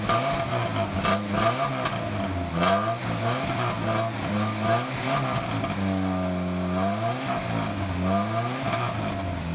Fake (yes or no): no